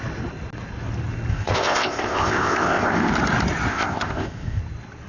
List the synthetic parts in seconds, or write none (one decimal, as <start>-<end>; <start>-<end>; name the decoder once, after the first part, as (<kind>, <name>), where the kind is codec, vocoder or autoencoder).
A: 1.3-3.1 (codec, ZipCodec); 3.7-4.6